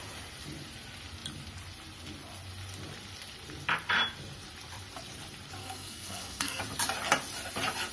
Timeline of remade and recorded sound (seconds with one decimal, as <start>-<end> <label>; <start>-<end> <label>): 0.0-5.6 recorded; 5.6-6.6 remade; 6.6-7.9 recorded

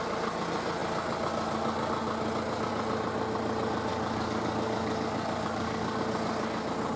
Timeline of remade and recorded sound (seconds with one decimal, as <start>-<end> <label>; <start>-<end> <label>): 0.0-3.9 recorded; 3.9-6.0 remade; 6.0-7.0 recorded

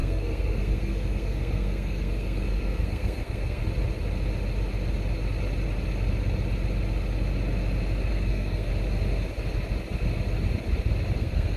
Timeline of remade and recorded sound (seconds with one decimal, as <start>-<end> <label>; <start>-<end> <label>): 0.0-3.6 remade; 3.6-8.1 recorded; 8.1-8.7 remade; 8.7-11.2 recorded; 11.2-11.6 remade

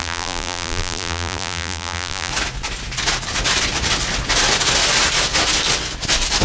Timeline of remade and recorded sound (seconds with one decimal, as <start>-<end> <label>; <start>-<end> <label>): 0.0-2.3 remade; 2.3-6.4 recorded

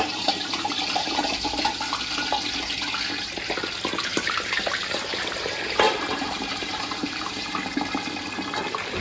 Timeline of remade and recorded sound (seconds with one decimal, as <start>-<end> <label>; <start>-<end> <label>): 0.0-4.1 recorded; 4.1-7.8 remade; 7.8-9.0 recorded